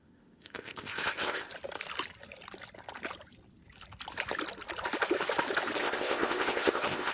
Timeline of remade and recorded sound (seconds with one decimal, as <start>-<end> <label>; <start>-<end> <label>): 0.0-1.5 remade; 1.5-5.8 recorded; 5.8-7.1 remade